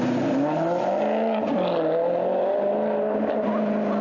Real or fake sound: real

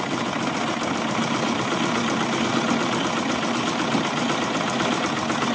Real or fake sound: real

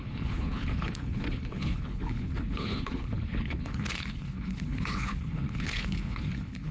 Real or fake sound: fake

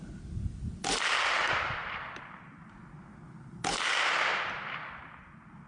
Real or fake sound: real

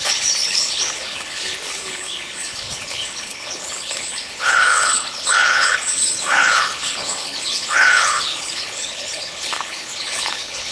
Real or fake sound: fake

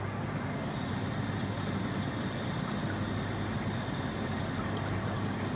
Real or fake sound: real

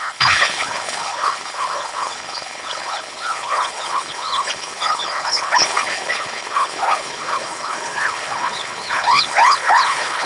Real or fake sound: fake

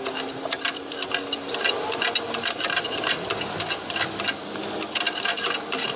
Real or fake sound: real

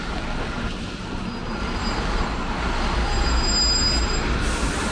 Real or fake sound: real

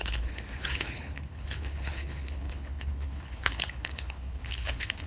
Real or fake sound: fake